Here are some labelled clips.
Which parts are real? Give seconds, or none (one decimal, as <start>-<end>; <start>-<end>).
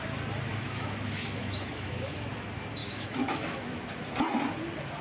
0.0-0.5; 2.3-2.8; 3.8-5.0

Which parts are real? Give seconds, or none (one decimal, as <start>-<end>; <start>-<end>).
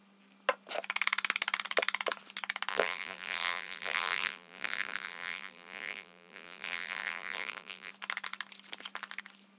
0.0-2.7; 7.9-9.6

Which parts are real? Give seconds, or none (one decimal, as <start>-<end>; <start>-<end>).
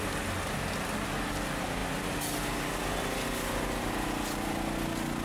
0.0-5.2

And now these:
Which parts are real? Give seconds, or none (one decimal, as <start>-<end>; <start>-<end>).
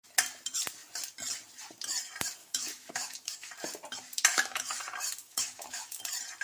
0.0-2.4; 3.5-4.3; 4.8-5.2; 6.0-6.4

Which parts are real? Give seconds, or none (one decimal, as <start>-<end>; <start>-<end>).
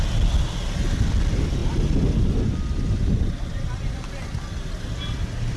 0.0-5.6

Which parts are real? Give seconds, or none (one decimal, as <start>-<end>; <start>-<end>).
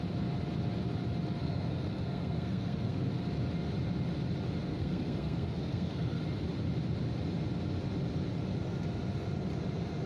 0.0-1.4; 3.1-4.7; 6.2-10.1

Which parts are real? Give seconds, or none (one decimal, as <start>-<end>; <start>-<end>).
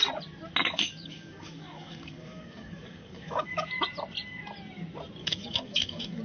0.0-0.6; 3.7-5.2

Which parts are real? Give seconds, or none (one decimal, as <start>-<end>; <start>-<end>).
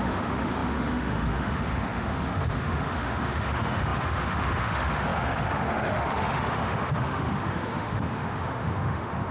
none